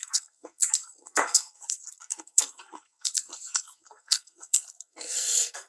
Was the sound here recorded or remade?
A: remade